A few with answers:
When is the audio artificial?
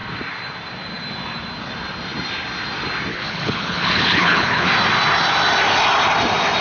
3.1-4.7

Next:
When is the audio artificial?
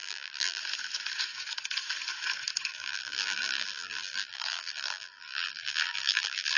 0.0-0.6; 2.7-6.6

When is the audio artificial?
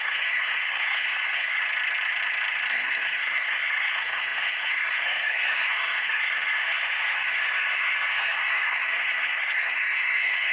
0.0-1.6; 2.7-10.5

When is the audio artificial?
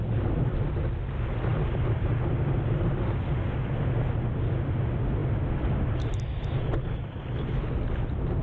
none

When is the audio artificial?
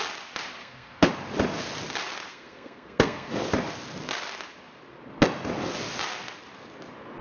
0.6-1.1; 2.3-3.3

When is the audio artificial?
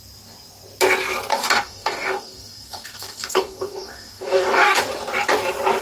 1.3-4.8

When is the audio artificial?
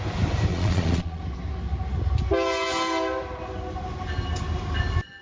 0.5-1.2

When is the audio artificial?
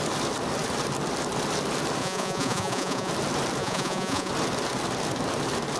2.0-3.1; 3.6-4.3